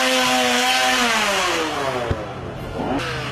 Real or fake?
real